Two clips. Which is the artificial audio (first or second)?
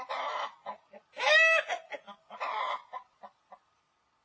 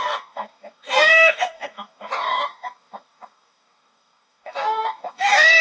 second